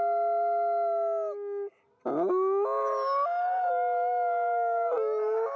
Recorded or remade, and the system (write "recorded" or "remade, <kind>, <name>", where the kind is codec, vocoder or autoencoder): recorded